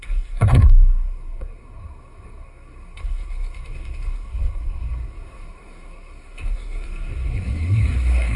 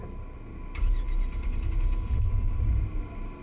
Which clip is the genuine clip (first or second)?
second